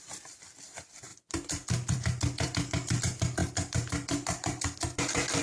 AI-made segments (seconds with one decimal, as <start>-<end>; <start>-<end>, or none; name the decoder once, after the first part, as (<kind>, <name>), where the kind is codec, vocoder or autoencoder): 1.1-3.0 (vocoder, BigVGAN v2); 3.4-5.4